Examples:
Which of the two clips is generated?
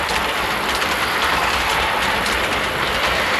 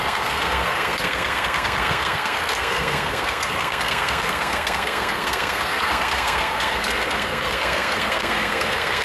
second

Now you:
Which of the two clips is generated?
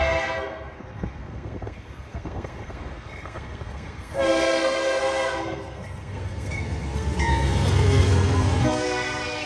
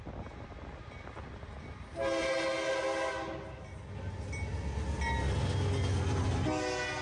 first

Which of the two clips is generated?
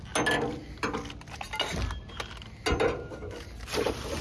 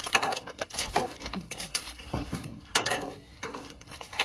second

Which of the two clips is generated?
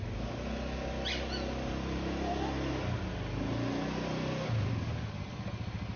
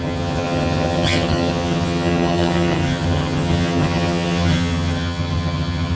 second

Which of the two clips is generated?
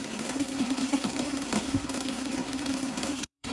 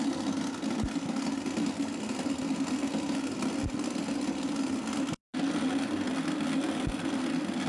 first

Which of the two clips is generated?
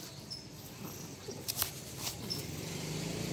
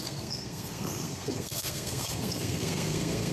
second